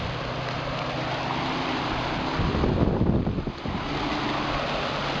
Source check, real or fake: real